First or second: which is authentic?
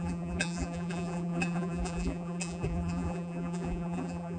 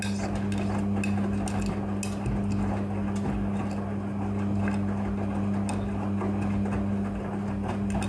second